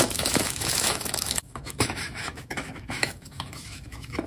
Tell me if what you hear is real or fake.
fake